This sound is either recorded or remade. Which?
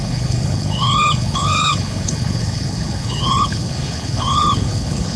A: remade